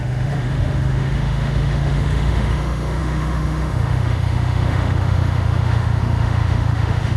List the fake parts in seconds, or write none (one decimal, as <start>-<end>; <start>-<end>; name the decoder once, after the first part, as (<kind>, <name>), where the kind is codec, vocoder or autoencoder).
0.0-7.2 (autoencoder, DAC-VAE)